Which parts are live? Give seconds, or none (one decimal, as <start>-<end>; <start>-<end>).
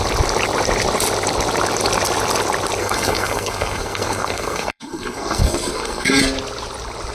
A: 0.0-2.8; 6.2-7.1